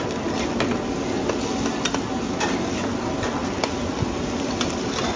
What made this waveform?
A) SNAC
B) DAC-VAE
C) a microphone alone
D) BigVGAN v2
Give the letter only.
C